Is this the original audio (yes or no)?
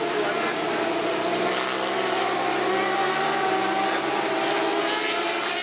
yes